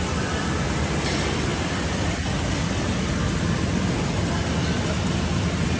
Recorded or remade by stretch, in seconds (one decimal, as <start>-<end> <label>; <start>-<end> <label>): 0.0-5.8 recorded